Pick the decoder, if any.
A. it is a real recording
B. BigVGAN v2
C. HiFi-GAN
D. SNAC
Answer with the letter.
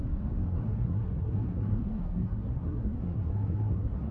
D